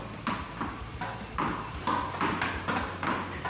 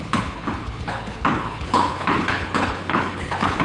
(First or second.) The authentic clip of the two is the first